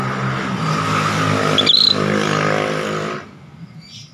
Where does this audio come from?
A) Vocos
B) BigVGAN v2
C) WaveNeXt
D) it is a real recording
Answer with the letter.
D